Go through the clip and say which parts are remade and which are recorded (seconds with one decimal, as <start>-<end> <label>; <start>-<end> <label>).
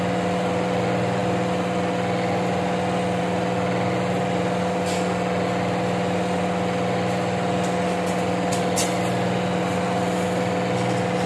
0.0-11.3 recorded